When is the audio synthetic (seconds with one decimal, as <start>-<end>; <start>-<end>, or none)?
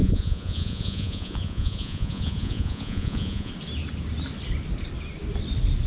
0.0-3.5